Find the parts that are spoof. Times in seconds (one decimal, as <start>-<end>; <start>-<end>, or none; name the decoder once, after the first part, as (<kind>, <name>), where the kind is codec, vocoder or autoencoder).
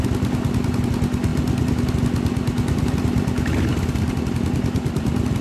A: none